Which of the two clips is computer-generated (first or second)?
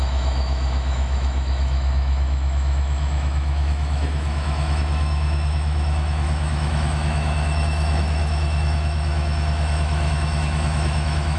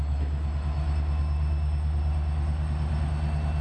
first